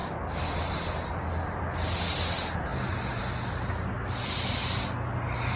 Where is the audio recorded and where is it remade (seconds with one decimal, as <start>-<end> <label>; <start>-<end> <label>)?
0.0-5.6 recorded